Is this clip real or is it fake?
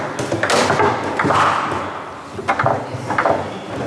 real